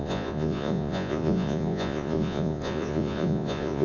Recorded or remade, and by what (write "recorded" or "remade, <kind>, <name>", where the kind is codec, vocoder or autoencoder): remade, vocoder, Vocos